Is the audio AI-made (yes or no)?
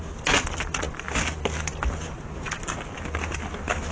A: no